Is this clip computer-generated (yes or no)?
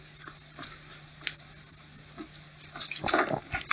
no